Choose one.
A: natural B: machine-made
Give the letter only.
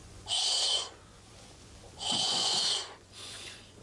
B